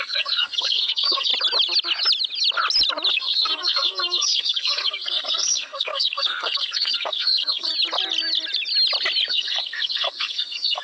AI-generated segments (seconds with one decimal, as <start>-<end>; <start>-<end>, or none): 0.0-1.3; 3.1-7.7; 9.3-10.8